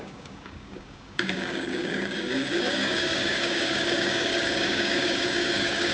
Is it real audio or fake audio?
fake